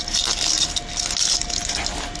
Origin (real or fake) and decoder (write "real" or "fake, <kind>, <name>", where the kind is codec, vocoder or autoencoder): real